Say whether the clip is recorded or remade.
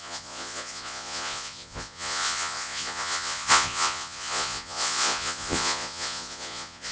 remade